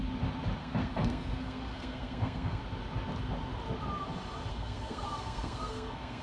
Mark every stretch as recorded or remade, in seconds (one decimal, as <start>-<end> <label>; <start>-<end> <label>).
0.0-0.6 recorded; 0.6-2.6 remade; 2.6-4.5 recorded; 4.5-6.2 remade